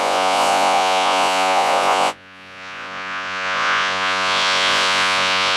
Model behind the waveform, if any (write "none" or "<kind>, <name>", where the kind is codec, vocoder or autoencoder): vocoder, Vocos